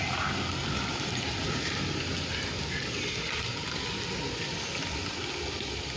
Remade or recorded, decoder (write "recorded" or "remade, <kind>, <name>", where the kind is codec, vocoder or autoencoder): recorded